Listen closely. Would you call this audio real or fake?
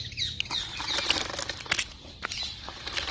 real